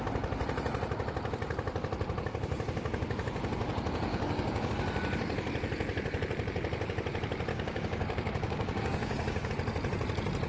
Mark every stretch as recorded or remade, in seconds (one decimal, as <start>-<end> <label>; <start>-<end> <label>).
0.0-4.1 recorded; 4.1-4.7 remade; 4.7-7.5 recorded; 7.5-9.5 remade; 9.5-10.5 recorded

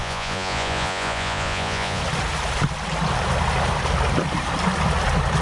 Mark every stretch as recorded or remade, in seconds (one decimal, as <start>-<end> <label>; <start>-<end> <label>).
0.0-2.0 remade; 2.0-5.4 recorded

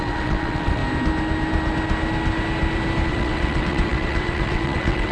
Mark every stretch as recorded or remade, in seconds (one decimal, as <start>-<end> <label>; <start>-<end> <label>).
0.0-0.8 remade; 0.8-3.1 recorded; 3.1-5.1 remade

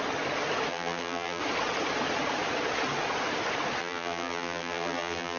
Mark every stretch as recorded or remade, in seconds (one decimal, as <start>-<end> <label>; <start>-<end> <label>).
0.0-0.7 recorded; 0.7-1.4 remade; 1.4-3.8 recorded; 3.8-5.4 remade

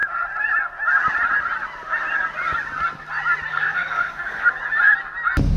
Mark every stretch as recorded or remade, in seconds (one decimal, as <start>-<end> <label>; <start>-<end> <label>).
0.0-3.5 recorded; 3.5-4.5 remade; 4.5-5.6 recorded